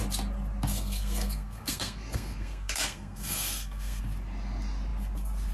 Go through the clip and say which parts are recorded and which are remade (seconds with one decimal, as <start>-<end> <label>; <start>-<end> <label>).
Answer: 0.0-0.7 recorded; 0.7-4.0 remade; 4.0-5.5 recorded